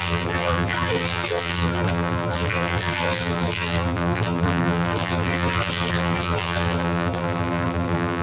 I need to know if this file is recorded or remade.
remade